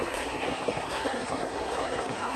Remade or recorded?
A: remade